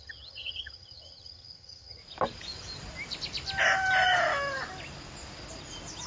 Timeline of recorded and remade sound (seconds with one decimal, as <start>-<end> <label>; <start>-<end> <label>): 0.0-2.0 remade; 2.0-6.1 recorded